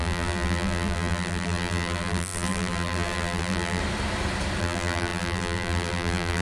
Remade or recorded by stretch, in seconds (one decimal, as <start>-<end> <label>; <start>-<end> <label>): 0.0-3.8 remade; 3.8-4.6 recorded; 4.6-6.4 remade